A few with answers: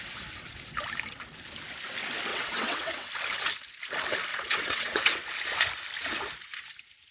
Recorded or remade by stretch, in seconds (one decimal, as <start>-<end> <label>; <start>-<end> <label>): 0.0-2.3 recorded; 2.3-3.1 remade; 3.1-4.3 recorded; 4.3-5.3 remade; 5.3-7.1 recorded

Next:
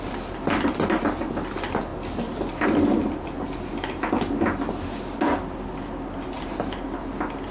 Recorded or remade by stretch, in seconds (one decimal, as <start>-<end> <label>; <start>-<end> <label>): 0.0-7.5 recorded

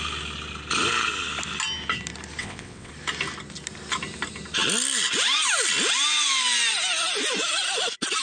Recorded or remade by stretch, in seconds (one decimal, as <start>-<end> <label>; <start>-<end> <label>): 0.0-2.4 recorded; 2.4-2.9 remade; 2.9-8.2 recorded